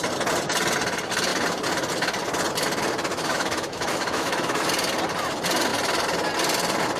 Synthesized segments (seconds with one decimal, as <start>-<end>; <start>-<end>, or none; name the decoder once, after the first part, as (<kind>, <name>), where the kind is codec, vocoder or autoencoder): 3.1-4.7 (autoencoder, DAC-VAE)